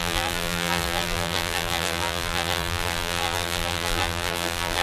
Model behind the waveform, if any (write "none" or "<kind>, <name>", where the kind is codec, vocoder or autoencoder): vocoder, BigVGAN v2